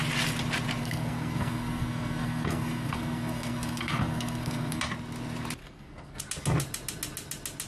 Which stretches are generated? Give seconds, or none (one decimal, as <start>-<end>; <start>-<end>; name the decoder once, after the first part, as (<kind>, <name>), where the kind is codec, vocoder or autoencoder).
0.8-4.8 (codec, SNAC); 5.6-6.2